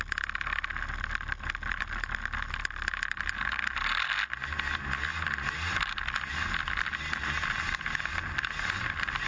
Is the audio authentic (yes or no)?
yes